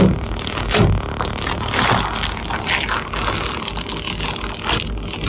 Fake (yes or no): no